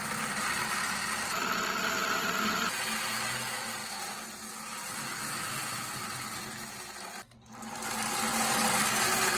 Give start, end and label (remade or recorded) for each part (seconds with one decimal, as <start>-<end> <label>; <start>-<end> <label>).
0.0-9.4 recorded